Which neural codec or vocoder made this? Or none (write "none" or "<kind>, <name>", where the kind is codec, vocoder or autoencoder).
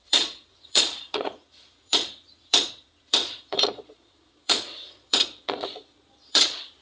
vocoder, Vocos